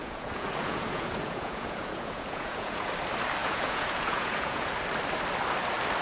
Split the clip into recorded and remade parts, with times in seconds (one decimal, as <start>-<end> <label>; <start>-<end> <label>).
0.0-2.9 remade; 2.9-3.4 recorded; 3.4-4.7 remade; 4.7-6.0 recorded